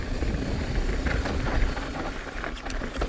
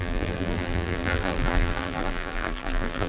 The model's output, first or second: second